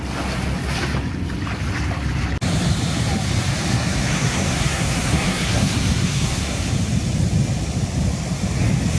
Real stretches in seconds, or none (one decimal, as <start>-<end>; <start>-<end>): 0.0-3.7; 6.7-9.0